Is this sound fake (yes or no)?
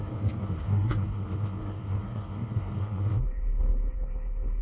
yes